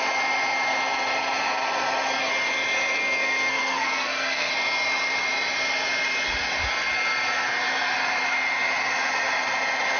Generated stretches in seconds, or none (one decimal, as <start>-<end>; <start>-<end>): 3.0-4.5